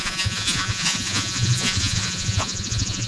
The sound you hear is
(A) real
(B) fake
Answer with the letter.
B